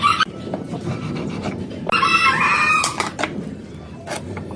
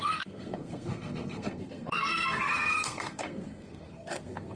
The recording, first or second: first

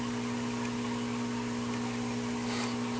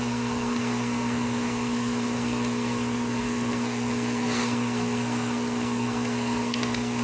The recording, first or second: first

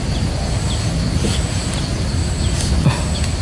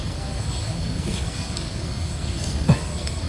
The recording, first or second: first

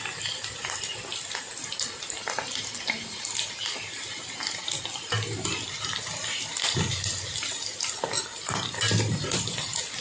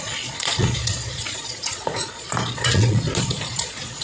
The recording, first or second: first